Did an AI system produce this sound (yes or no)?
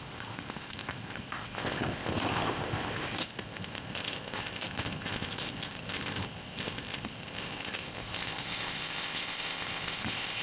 yes